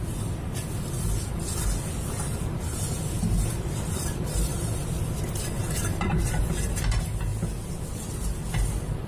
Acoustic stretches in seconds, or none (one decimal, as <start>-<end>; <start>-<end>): 0.0-4.0; 4.9-5.6; 6.8-9.1